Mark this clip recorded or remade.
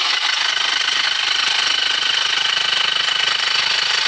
recorded